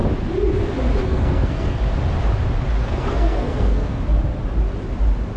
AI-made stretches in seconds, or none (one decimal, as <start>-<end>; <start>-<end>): 1.0-1.8; 2.8-4.0